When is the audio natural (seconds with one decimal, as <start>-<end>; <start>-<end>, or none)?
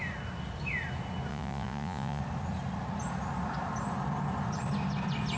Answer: 0.0-1.3; 2.2-5.4